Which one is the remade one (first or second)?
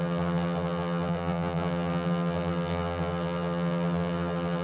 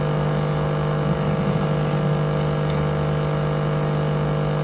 first